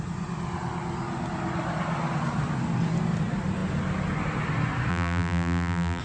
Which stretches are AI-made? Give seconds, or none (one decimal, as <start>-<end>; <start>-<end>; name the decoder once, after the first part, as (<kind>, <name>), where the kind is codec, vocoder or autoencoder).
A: 4.9-6.0 (vocoder, BigVGAN v2)